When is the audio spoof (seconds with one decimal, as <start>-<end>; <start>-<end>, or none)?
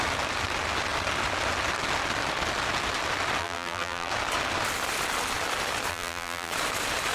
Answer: 3.4-4.1; 5.9-6.5